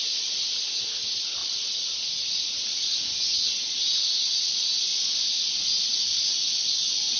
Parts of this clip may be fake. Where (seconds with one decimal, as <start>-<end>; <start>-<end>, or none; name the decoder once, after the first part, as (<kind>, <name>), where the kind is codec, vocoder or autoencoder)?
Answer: 0.0-0.7 (vocoder, BigVGAN v2); 1.4-3.2; 4.9-5.4